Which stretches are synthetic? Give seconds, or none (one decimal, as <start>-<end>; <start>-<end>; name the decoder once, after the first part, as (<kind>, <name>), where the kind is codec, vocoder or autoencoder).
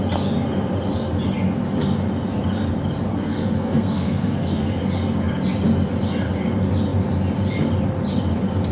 3.1-4.8 (codec, SNAC)